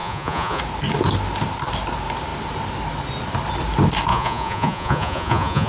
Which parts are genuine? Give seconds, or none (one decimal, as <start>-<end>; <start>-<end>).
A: 0.6-4.1